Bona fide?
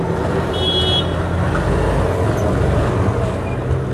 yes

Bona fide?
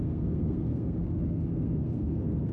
no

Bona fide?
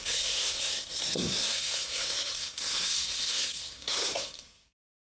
no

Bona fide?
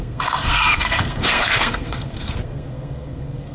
no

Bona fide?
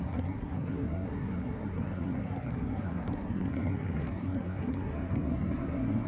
no